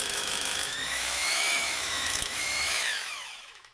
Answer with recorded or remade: remade